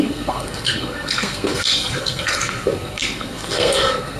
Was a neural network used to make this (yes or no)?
yes